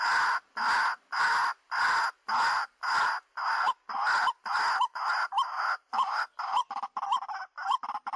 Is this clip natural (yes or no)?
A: yes